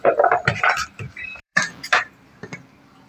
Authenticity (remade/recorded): remade